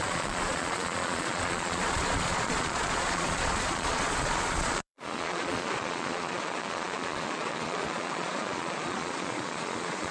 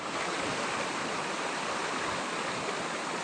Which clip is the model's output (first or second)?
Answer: first